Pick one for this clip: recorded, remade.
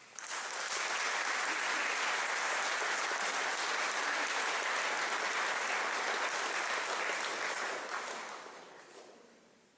recorded